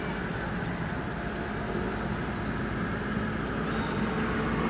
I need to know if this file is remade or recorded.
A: recorded